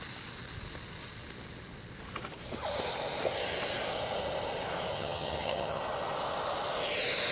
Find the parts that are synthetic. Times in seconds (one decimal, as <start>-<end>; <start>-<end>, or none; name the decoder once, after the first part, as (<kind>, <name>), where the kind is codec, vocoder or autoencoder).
4.9-5.8 (vocoder, HiFi-GAN)